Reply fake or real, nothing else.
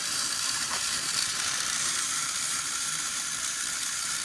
fake